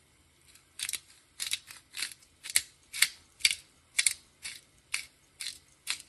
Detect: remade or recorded remade